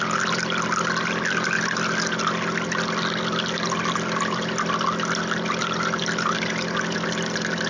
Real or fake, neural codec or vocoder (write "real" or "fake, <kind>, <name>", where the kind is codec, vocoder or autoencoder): real